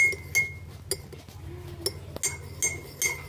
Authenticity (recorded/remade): recorded